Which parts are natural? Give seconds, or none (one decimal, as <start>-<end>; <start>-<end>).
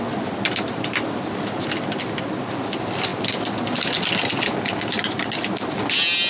0.0-6.3